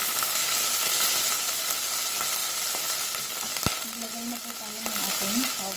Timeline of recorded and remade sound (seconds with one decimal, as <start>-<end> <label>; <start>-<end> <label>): 0.0-2.4 recorded; 2.4-3.0 remade; 3.0-5.8 recorded